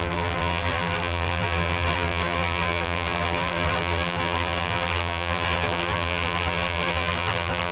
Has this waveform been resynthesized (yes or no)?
yes